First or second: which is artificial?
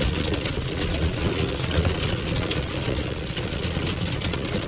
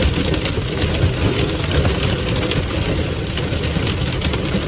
first